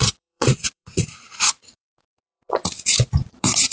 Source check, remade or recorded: remade